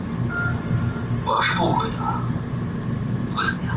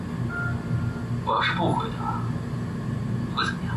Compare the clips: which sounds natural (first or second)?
second